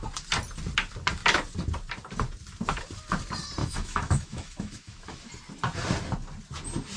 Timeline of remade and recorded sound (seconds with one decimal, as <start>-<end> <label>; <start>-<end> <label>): 0.0-3.6 recorded; 3.6-5.3 remade; 5.3-7.0 recorded